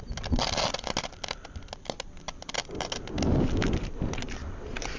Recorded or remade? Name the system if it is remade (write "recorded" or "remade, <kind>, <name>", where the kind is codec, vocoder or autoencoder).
recorded